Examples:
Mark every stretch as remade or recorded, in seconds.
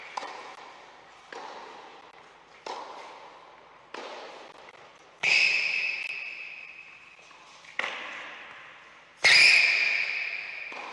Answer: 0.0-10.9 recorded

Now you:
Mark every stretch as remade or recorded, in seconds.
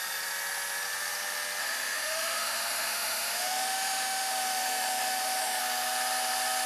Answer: 0.0-1.6 recorded; 1.6-5.6 remade; 5.6-6.7 recorded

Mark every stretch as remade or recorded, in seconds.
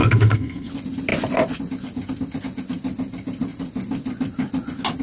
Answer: 0.0-0.7 remade; 0.7-5.0 recorded